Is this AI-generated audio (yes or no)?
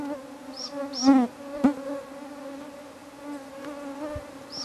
no